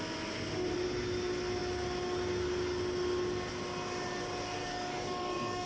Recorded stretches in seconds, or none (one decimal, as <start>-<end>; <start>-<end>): 0.0-4.6